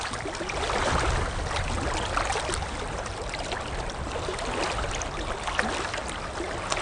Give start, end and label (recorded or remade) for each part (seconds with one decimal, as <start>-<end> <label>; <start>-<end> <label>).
0.0-6.8 recorded